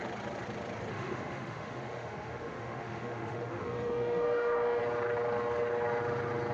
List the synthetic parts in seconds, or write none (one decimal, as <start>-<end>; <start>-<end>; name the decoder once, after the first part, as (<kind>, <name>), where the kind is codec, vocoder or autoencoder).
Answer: 0.9-4.8 (autoencoder, DAC-VAE)